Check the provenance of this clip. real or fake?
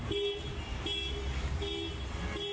real